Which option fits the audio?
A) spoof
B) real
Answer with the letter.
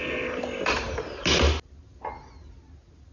B